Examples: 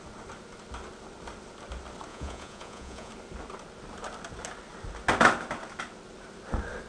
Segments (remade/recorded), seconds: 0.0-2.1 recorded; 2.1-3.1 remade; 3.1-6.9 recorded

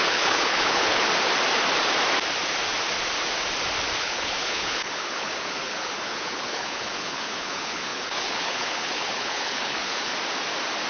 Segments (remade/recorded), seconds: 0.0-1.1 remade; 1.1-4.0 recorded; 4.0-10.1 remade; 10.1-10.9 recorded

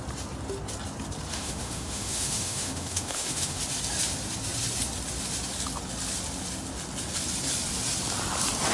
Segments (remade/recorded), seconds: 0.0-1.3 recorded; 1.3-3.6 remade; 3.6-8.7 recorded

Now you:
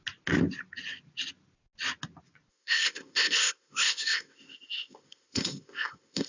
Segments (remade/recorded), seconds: 0.0-2.5 recorded; 2.5-6.3 remade

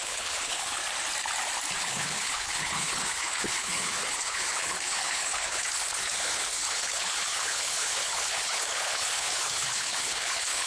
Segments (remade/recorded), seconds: 0.0-0.8 remade; 0.8-1.8 recorded; 1.8-10.7 remade

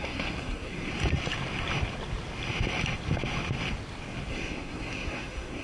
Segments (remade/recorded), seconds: 0.0-0.9 remade; 0.9-4.3 recorded; 4.3-5.6 remade